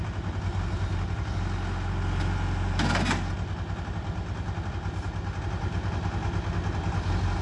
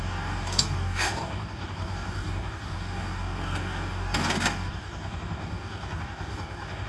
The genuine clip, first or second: first